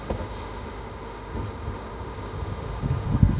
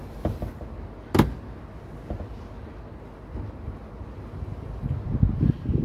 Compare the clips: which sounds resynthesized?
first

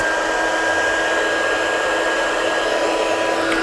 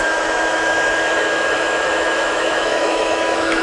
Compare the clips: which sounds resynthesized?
second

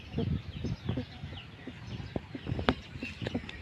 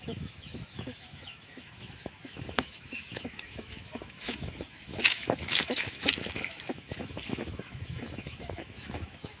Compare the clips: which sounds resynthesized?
second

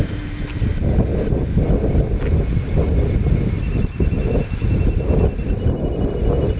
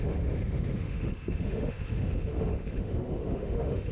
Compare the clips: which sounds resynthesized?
second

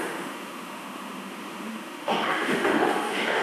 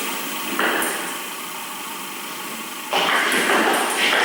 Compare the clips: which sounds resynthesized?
first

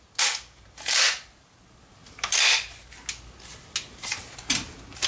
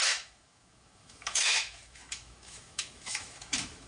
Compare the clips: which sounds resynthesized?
second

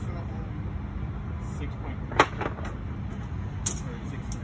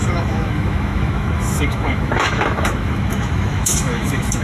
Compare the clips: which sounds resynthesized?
second